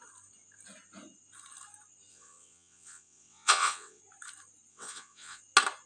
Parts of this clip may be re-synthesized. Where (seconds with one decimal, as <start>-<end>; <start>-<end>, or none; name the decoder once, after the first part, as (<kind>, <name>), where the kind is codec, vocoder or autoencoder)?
2.1-4.0 (vocoder, WaveNeXt); 4.7-5.4